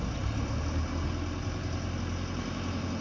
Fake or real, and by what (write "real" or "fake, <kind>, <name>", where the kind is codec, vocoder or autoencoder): real